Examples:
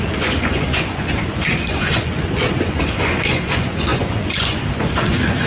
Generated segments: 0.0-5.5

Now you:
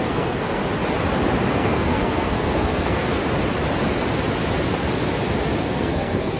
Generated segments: 0.0-0.6; 1.5-3.2; 5.6-6.4

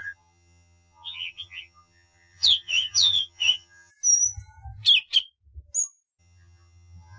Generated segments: 0.0-3.9; 6.2-7.2

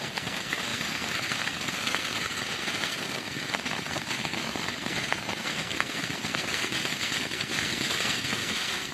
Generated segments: 0.0-8.9